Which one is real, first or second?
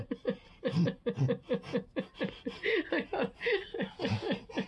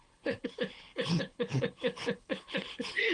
first